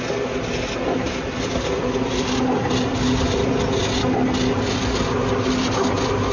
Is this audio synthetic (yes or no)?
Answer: no